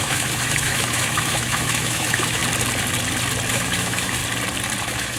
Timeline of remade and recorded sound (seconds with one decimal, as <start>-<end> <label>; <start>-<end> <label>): 0.0-2.4 remade; 2.4-3.5 recorded; 3.5-4.2 remade; 4.2-4.8 recorded; 4.8-5.2 remade